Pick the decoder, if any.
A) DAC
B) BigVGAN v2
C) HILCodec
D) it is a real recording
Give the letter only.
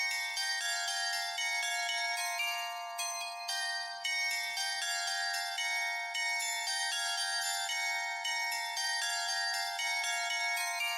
B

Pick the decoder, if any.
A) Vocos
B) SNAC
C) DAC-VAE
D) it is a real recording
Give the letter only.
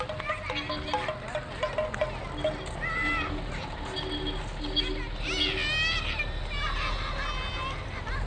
D